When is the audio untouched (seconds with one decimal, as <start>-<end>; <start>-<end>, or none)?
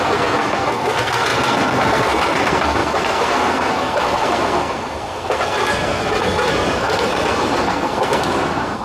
none